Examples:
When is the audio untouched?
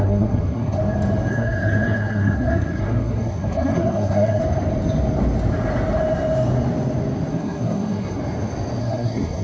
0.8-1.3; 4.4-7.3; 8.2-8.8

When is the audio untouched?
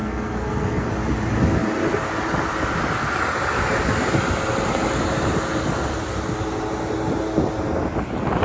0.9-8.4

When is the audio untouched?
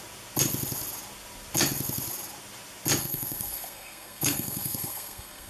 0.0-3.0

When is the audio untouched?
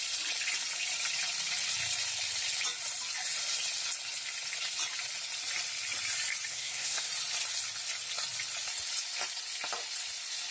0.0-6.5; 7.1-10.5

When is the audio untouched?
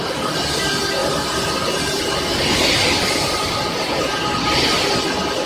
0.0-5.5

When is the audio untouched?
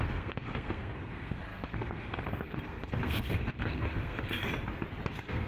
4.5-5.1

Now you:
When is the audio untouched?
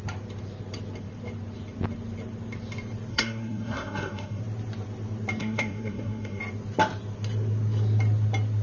0.0-3.1; 4.4-5.4; 6.4-8.6